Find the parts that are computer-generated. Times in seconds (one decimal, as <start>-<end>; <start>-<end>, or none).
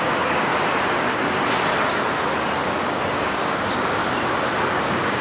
0.0-0.5; 2.9-4.0; 4.8-5.2